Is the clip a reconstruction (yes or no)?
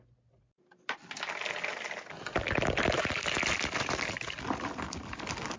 no